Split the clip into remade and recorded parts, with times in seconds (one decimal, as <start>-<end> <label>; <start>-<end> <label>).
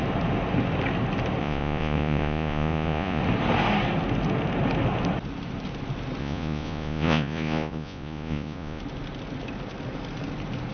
0.0-1.4 recorded; 1.4-3.2 remade; 3.2-6.2 recorded; 6.2-8.8 remade; 8.8-10.7 recorded